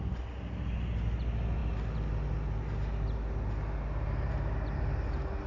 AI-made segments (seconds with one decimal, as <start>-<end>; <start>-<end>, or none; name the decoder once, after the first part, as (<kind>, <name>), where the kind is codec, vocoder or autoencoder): none